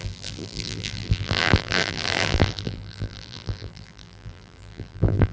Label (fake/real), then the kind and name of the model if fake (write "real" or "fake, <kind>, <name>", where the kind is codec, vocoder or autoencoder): fake, vocoder, BigVGAN v2